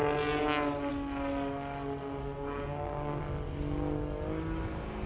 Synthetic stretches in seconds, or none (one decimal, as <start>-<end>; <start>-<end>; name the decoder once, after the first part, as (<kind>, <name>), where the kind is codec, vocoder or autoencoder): 2.2-3.2 (codec, SNAC)